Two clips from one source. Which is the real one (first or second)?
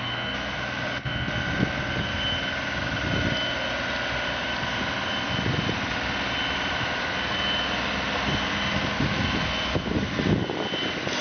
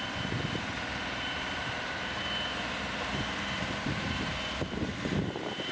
first